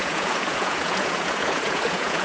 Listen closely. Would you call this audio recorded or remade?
remade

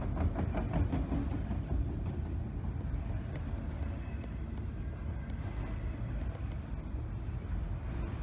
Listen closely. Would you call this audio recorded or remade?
recorded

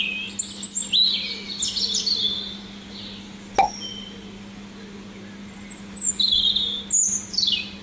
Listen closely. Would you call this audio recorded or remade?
recorded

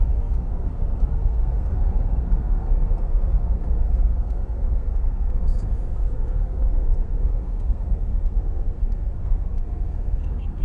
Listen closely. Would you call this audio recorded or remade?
remade